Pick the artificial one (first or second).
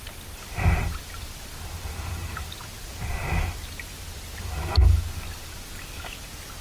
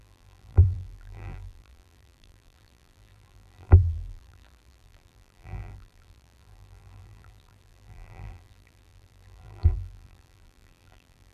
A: second